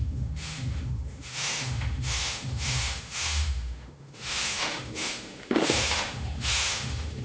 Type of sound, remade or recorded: remade